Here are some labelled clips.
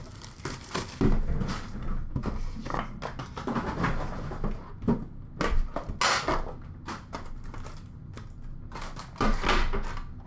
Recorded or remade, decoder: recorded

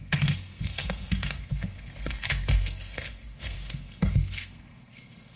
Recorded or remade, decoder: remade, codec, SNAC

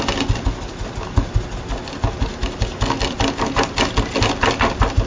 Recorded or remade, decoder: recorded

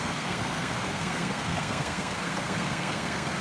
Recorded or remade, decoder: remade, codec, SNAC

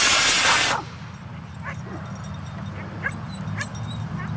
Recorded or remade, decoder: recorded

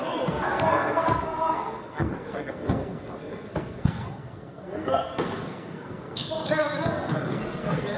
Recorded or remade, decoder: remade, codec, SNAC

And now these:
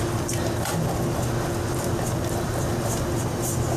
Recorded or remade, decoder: recorded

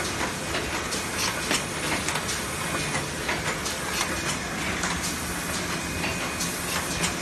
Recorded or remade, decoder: recorded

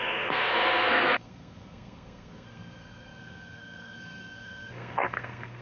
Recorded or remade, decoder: remade, codec, SNAC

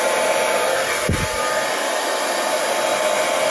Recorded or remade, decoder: recorded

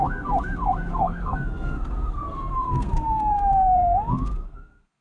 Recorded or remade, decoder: remade, codec, SNAC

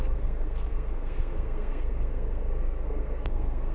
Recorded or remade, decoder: remade, codec, SNAC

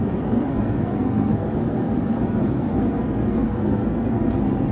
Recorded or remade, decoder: remade, codec, SNAC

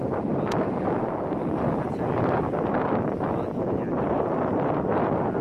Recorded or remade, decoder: recorded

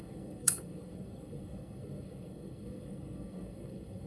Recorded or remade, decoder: remade, codec, SNAC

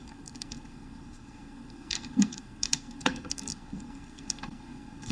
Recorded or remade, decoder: remade, codec, SNAC